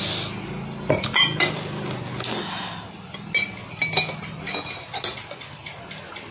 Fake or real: real